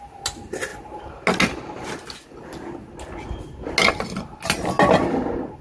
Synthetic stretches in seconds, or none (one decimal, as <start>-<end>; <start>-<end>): none